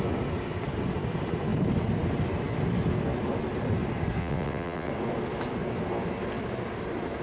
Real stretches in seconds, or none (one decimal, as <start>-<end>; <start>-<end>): 0.0-4.2; 4.9-7.2